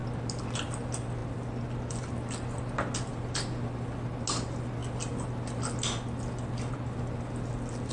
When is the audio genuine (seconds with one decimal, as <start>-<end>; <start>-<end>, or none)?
0.0-7.9